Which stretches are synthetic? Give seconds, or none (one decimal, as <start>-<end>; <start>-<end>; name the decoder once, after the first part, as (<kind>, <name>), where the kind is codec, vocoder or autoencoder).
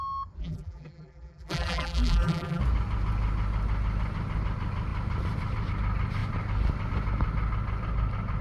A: 0.4-2.6 (vocoder, BigVGAN v2)